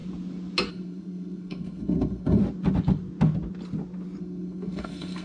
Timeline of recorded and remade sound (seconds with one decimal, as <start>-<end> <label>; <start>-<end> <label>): 0.0-0.7 recorded; 0.7-2.4 remade; 2.4-4.2 recorded; 4.2-5.2 remade